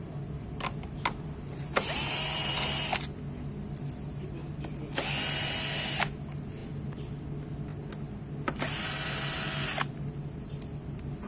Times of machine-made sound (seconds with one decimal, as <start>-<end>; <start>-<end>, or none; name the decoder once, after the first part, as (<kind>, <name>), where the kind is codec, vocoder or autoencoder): none